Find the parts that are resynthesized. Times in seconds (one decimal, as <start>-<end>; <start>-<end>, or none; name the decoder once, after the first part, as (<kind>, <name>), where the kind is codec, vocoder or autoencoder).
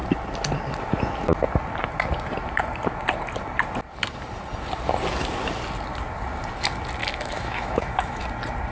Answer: 7.0-8.2 (autoencoder, DAC-VAE)